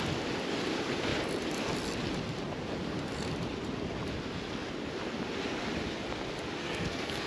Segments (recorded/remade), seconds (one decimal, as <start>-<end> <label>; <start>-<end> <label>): 0.0-6.6 recorded; 6.6-7.3 remade